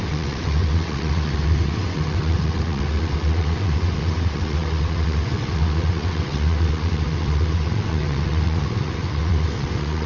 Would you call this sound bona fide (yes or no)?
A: no